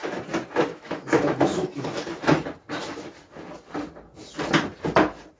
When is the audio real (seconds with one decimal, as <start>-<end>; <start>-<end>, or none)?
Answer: 0.0-0.7; 2.0-5.4